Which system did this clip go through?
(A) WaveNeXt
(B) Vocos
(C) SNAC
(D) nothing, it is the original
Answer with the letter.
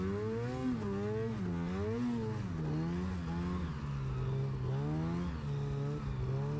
D